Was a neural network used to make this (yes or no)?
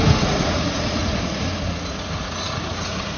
yes